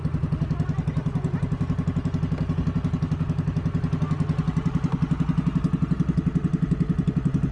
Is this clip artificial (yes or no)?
no